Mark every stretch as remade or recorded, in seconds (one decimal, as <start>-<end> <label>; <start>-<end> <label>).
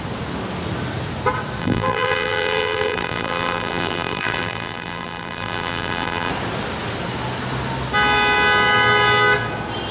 0.0-1.6 recorded; 1.6-6.3 remade; 6.3-9.9 recorded